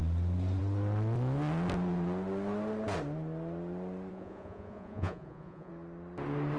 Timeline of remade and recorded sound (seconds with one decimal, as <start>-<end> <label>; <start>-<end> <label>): 0.0-4.1 recorded; 4.1-5.7 remade; 5.7-6.6 recorded